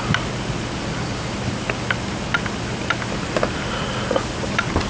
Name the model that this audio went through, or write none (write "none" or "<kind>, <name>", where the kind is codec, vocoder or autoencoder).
none